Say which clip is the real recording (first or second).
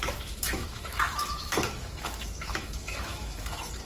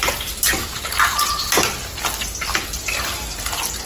second